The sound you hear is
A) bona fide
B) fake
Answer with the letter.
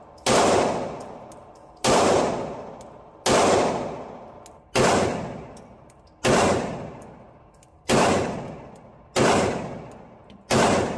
A